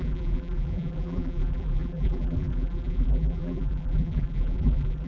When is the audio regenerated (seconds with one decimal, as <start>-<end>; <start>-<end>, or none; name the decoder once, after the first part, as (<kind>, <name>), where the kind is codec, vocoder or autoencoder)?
0.0-5.1 (vocoder, BigVGAN v2)